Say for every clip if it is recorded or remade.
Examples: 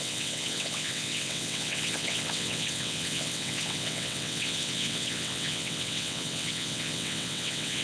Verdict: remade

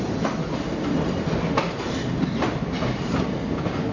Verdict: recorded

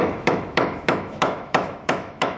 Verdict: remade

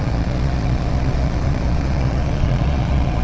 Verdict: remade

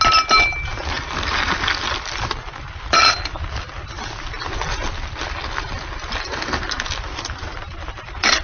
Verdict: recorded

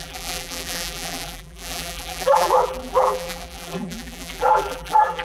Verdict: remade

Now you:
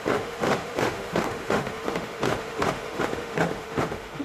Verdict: remade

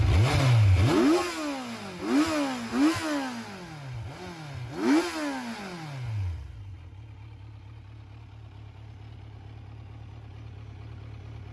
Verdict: recorded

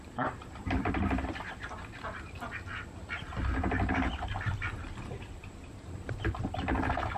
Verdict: remade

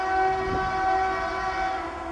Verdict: recorded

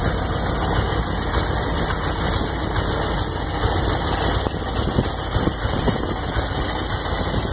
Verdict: recorded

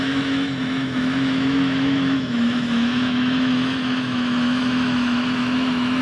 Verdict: remade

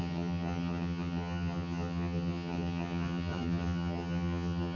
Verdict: remade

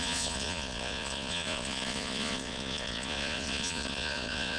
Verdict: remade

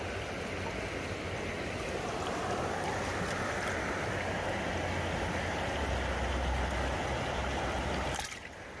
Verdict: recorded